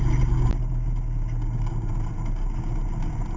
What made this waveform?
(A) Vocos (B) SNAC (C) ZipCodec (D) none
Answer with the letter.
D